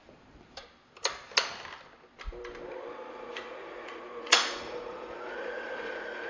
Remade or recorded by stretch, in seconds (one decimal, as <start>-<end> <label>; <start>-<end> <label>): 0.0-3.1 recorded; 3.1-6.3 remade